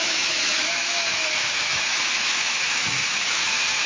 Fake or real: fake